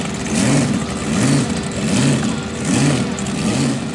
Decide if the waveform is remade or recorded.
recorded